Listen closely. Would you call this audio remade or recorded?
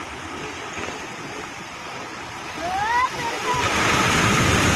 remade